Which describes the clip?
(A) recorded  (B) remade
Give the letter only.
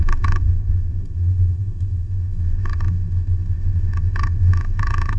B